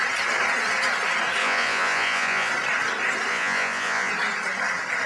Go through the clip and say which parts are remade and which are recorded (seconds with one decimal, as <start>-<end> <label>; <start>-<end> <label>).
0.0-1.4 recorded; 1.4-2.5 remade; 2.5-3.3 recorded; 3.3-4.1 remade; 4.1-5.1 recorded